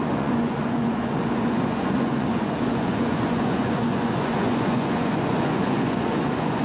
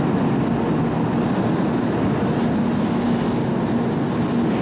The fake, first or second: first